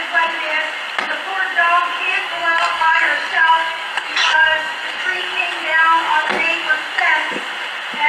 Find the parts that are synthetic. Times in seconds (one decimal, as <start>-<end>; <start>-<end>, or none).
2.1-7.0